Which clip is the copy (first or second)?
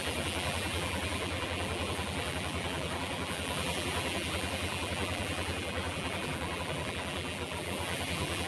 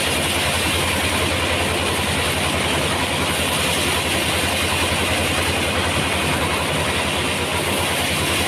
first